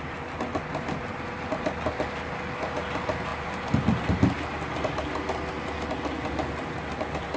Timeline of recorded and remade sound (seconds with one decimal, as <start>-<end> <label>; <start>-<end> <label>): 0.0-7.4 recorded